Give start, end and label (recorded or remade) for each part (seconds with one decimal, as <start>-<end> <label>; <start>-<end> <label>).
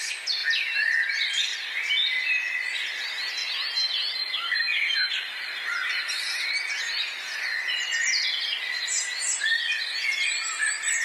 0.0-11.0 recorded